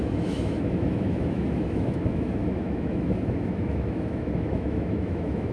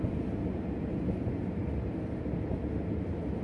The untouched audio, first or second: second